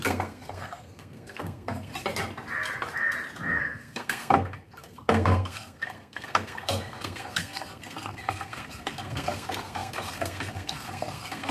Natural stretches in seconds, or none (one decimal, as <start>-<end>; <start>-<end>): 1.9-3.6